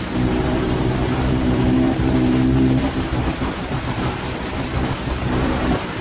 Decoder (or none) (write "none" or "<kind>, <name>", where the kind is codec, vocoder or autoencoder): vocoder, BigVGAN v2